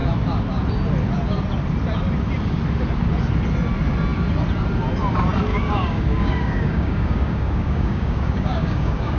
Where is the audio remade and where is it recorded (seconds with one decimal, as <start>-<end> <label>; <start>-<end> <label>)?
0.0-5.5 recorded; 5.5-9.2 remade